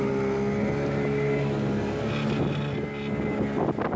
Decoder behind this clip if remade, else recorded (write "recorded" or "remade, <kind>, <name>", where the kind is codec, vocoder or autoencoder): recorded